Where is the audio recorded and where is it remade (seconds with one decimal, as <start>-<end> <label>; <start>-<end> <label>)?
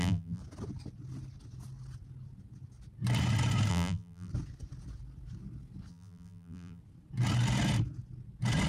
0.0-0.4 remade; 0.4-3.7 recorded; 3.7-4.3 remade; 4.3-5.9 recorded; 5.9-6.8 remade; 6.8-8.7 recorded